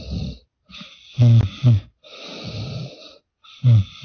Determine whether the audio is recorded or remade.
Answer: recorded